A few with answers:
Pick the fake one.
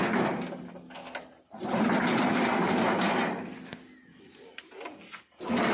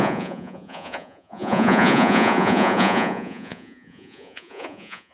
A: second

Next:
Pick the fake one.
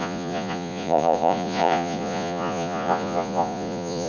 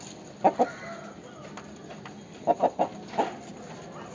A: first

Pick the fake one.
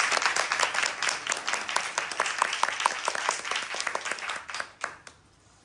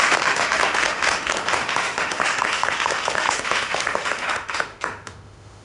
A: second